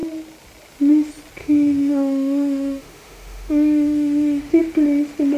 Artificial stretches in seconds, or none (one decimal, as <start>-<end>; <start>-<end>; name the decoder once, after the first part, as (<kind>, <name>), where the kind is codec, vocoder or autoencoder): 1.4-4.6 (autoencoder, DAC-VAE)